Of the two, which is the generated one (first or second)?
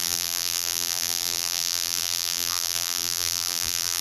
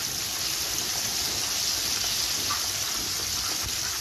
first